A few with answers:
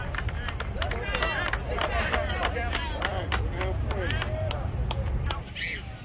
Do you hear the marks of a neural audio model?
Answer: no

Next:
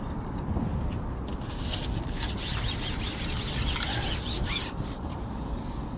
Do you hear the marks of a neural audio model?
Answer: no